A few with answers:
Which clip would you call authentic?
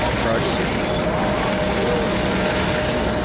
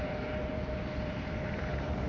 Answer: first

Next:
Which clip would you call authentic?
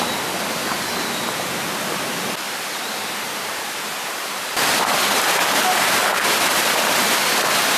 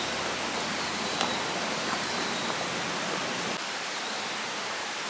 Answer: first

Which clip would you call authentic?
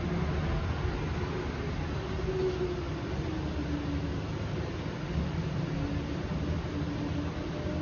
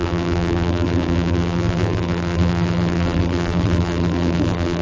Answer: first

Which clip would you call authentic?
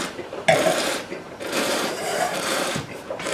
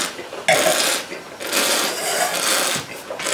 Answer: second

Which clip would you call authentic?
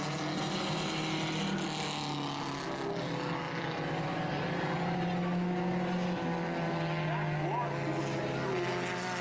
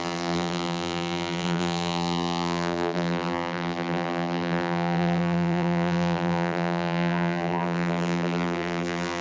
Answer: first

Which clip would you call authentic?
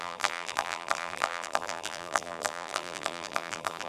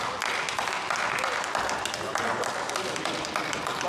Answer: second